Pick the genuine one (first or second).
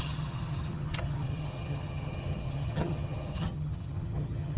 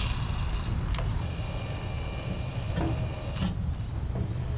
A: second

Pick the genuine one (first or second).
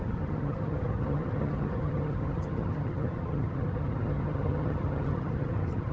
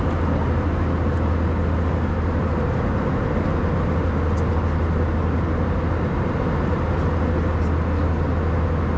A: second